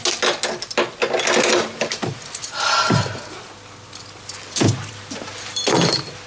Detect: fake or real real